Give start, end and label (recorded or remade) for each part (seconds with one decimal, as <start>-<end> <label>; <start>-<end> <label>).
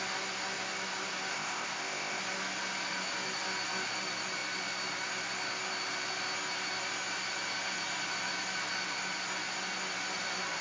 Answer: 0.0-1.3 recorded; 1.3-2.2 remade; 2.2-10.6 recorded